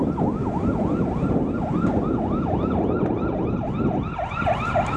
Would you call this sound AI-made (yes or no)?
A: no